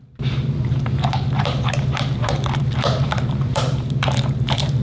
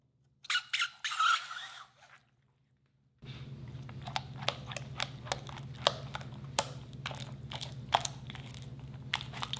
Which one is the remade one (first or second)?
first